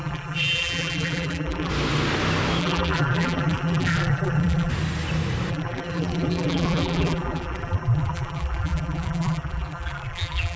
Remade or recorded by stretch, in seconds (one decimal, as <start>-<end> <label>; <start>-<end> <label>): 0.0-1.7 remade; 1.7-2.6 recorded; 2.6-4.7 remade; 4.7-5.5 recorded; 5.5-10.6 remade